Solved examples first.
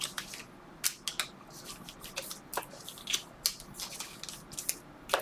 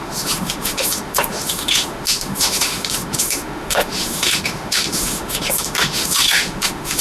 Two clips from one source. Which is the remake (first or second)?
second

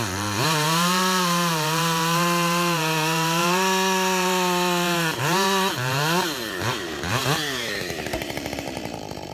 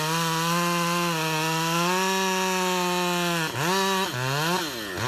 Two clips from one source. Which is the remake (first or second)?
first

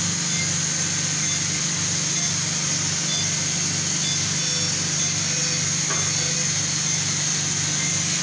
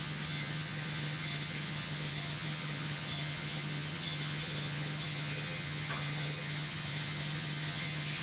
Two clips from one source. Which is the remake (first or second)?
second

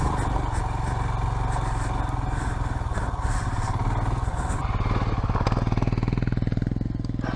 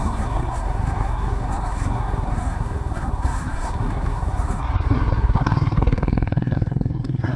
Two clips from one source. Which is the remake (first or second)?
second